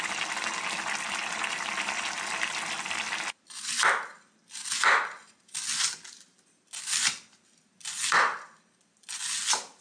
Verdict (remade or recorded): recorded